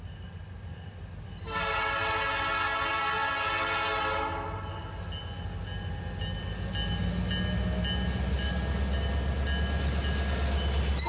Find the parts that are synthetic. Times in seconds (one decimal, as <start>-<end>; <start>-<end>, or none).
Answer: none